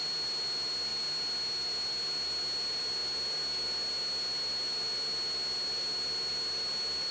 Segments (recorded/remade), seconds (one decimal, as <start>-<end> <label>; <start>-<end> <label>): 0.0-7.1 recorded